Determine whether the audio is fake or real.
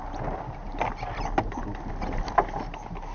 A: real